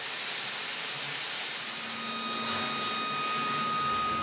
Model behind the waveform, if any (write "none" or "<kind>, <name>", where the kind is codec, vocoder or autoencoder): none